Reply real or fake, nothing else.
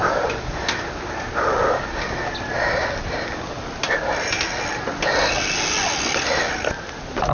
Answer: real